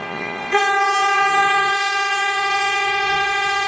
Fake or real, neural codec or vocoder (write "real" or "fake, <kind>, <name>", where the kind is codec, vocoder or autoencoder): fake, vocoder, Vocos